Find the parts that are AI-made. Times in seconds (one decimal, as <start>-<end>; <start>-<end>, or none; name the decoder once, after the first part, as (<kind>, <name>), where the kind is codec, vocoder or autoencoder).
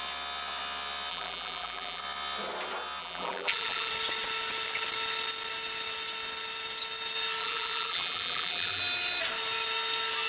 1.1-2.0 (vocoder, BigVGAN v2); 3.0-3.9; 7.4-8.8